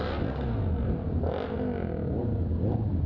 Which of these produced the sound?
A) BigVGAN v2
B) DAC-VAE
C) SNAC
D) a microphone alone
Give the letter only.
D